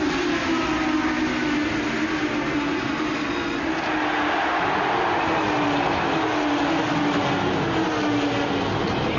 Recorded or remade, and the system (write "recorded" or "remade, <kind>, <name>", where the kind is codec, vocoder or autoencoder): recorded